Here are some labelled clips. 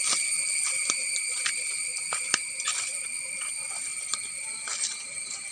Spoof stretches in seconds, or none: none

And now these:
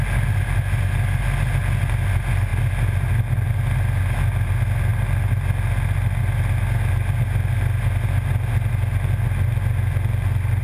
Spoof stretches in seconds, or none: none

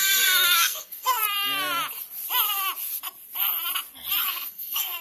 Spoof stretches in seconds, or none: 0.0-1.2 (codec, SNAC); 4.2-5.0